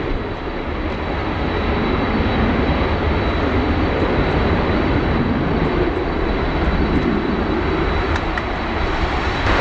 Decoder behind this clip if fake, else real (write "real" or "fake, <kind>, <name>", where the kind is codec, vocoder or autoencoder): real